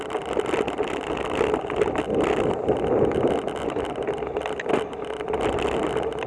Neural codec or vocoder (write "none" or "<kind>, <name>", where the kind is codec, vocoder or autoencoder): none